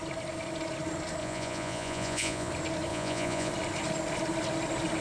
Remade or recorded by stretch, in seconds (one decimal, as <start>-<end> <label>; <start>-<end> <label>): 0.0-1.2 recorded; 1.2-2.5 remade; 2.5-2.9 recorded; 2.9-3.5 remade; 3.5-5.0 recorded